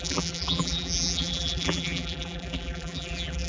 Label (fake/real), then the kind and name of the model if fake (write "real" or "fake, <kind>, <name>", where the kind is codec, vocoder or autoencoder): fake, vocoder, BigVGAN v2